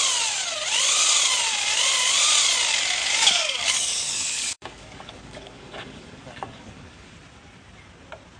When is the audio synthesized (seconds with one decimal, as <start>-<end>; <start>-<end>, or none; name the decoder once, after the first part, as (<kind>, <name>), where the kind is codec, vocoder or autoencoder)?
3.0-7.1 (codec, DAC)